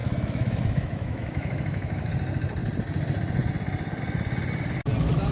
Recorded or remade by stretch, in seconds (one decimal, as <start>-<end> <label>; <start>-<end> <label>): 0.0-2.1 remade; 2.1-5.3 recorded